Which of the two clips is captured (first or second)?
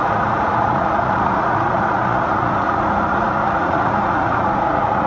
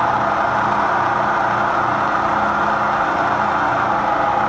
second